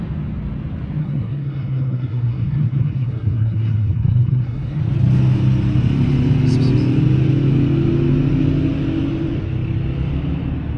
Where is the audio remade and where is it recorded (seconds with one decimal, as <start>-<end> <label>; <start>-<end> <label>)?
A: 0.0-1.0 recorded; 1.0-4.8 remade; 4.8-10.8 recorded